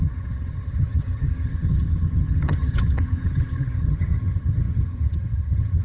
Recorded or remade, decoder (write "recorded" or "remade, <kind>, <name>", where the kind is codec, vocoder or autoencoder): remade, vocoder, HiFi-GAN